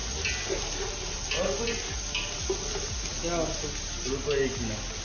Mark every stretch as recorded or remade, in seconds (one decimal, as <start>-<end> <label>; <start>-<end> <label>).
0.0-5.0 recorded